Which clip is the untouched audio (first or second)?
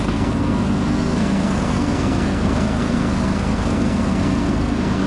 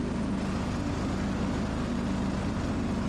second